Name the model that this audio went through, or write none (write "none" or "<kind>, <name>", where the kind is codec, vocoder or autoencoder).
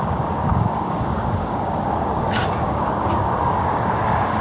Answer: codec, DAC